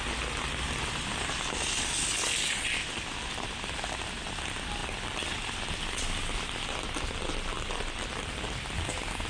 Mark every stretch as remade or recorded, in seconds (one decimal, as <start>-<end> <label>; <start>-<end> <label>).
0.0-9.3 recorded